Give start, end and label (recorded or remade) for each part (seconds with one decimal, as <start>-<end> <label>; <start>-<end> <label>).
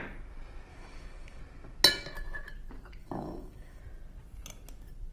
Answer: 0.0-0.7 recorded; 0.7-1.4 remade; 1.4-3.0 recorded; 3.0-3.8 remade; 3.8-5.1 recorded